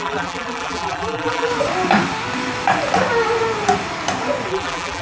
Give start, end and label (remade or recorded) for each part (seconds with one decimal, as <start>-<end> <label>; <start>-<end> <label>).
0.0-1.5 remade; 1.5-4.5 recorded; 4.5-5.0 remade

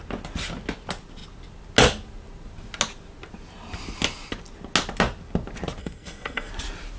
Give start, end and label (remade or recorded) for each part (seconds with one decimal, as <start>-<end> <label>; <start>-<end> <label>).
0.0-5.8 recorded; 5.8-6.5 remade; 6.5-7.0 recorded

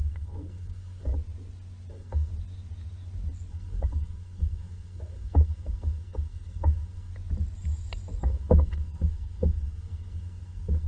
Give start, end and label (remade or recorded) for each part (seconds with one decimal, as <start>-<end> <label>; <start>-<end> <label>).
0.0-1.1 remade; 1.1-1.9 recorded; 1.9-2.3 remade; 2.3-3.5 recorded; 3.5-7.1 remade; 7.1-8.2 recorded; 8.2-10.9 remade

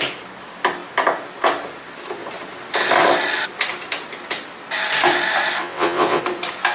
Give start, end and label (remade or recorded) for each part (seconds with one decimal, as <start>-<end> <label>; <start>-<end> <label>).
0.0-5.6 recorded; 5.6-6.2 remade; 6.2-6.7 recorded